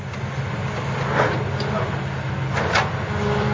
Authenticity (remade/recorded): recorded